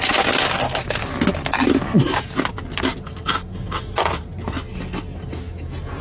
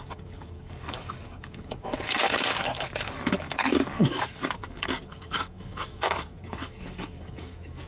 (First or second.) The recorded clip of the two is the first